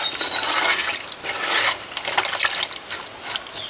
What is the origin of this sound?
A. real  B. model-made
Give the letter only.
A